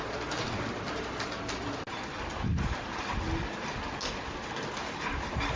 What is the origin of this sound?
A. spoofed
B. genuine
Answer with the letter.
B